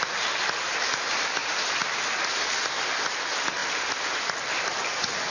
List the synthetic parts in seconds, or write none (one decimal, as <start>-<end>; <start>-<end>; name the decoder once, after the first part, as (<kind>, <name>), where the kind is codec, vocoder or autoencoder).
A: none